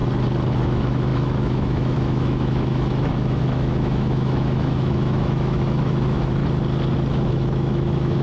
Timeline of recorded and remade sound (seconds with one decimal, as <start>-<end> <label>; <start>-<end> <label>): 0.0-0.6 recorded; 0.6-6.4 remade; 6.4-7.3 recorded; 7.3-8.2 remade